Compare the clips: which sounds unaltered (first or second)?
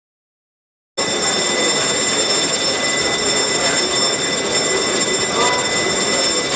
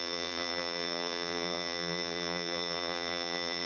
first